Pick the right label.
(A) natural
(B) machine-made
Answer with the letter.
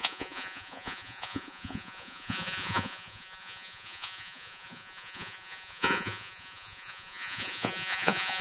B